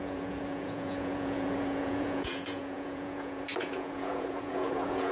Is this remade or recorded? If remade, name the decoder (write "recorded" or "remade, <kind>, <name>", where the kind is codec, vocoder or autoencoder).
remade, vocoder, Vocos